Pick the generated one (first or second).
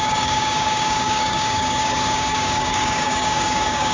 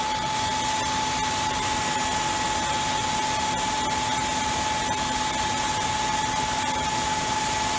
first